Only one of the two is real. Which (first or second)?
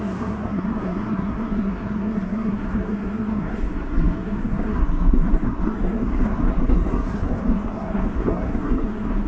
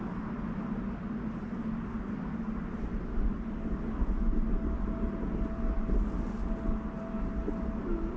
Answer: second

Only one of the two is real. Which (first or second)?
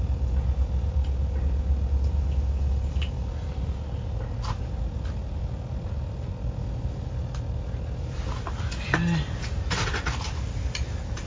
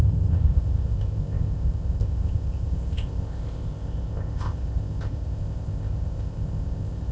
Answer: first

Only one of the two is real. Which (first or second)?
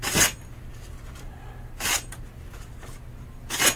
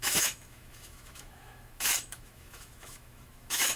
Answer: first